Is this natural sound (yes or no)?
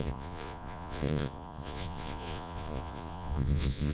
no